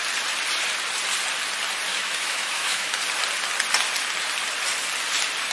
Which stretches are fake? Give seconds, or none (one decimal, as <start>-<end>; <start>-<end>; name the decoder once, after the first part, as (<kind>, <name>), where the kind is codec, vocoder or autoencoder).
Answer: 1.9-3.0 (autoencoder, DAC-VAE)